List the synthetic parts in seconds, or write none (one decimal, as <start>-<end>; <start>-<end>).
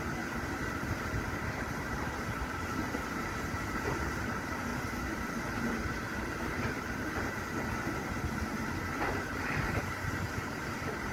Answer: 0.0-4.7; 5.3-11.1